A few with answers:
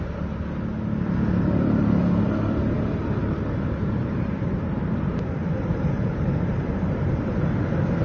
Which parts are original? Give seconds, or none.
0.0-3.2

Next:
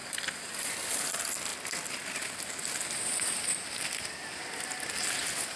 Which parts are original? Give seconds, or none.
0.7-5.6